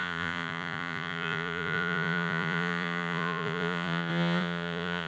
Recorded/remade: remade